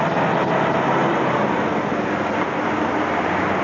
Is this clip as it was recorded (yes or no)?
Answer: yes